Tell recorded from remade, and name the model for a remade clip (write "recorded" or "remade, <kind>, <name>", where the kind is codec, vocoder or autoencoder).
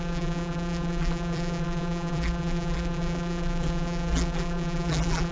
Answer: remade, vocoder, BigVGAN v2